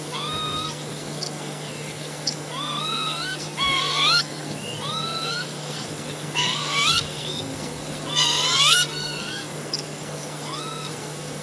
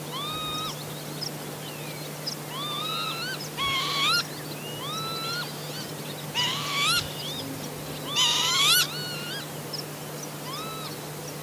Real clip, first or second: second